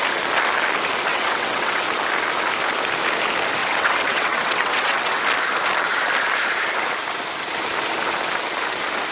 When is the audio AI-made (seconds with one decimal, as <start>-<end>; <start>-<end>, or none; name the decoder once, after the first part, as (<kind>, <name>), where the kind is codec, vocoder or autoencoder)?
1.1-1.8 (vocoder, WaveNeXt); 3.6-5.2